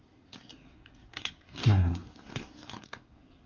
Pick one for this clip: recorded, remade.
remade